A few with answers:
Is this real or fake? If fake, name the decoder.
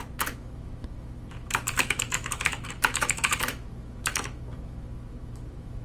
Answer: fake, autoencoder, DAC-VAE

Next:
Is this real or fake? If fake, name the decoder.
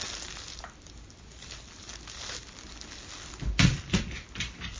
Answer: real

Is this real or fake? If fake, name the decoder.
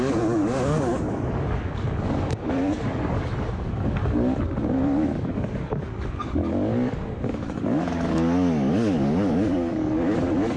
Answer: fake, codec, DAC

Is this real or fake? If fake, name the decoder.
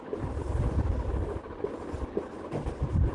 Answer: real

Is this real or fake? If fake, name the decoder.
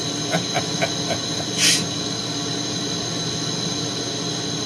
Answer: real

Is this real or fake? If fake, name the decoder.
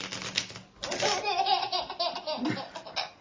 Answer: real